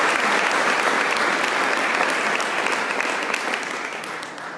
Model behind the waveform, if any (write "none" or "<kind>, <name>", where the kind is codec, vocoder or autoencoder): none